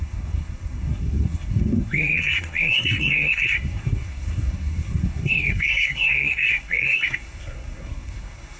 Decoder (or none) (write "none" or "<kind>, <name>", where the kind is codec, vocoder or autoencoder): codec, SNAC